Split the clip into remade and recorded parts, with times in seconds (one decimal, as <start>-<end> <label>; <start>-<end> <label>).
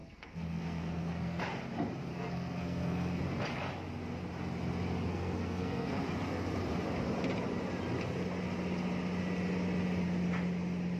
0.0-1.4 remade; 1.4-2.1 recorded; 2.1-3.2 remade; 3.2-5.1 recorded; 5.1-6.0 remade; 6.0-11.0 recorded